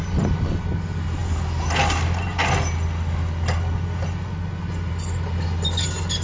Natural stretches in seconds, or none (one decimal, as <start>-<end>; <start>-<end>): 0.0-6.2